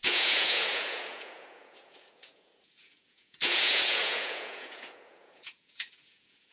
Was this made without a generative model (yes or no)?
no